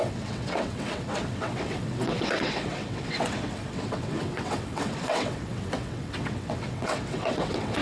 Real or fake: fake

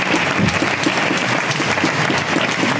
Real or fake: real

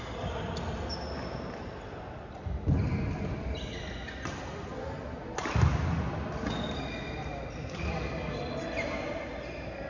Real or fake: real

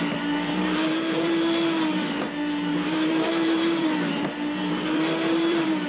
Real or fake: fake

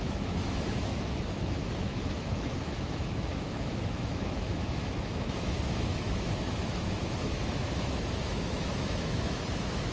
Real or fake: fake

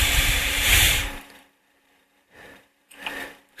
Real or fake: fake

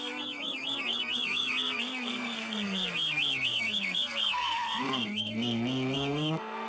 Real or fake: fake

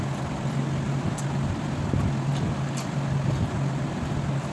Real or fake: real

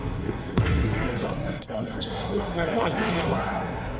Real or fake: fake